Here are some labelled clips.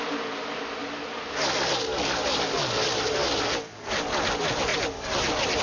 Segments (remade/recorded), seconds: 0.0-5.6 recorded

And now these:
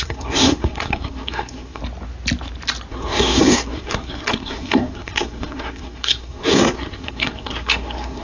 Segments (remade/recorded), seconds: 0.0-1.8 remade; 1.8-2.9 recorded; 2.9-8.2 remade

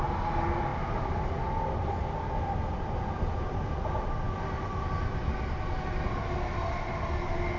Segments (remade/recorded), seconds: 0.0-7.6 recorded